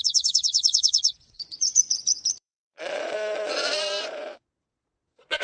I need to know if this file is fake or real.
fake